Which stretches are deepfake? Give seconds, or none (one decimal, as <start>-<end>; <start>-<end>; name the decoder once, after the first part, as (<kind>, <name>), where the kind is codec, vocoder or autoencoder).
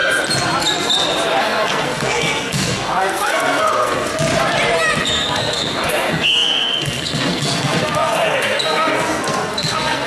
1.4-4.1 (codec, SNAC); 5.0-10.1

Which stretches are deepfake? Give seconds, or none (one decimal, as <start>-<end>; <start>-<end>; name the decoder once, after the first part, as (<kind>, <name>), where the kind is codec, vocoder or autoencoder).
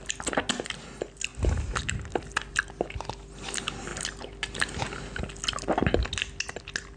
none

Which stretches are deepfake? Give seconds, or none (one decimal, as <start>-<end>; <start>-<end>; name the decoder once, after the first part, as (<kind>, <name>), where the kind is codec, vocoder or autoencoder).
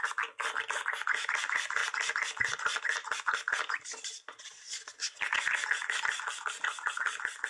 none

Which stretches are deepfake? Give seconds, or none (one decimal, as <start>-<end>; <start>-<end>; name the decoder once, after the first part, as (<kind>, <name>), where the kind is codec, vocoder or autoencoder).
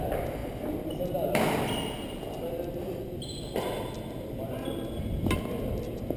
none